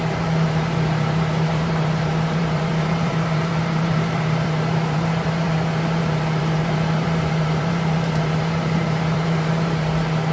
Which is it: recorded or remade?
remade